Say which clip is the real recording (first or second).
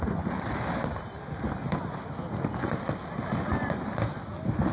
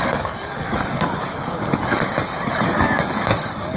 first